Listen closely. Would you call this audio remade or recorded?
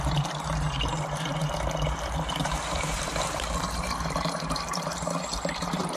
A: remade